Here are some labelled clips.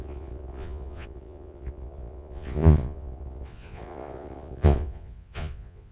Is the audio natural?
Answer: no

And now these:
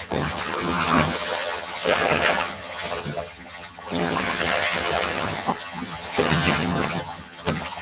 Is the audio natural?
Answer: no